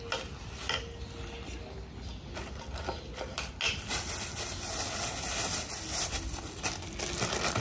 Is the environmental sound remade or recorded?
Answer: recorded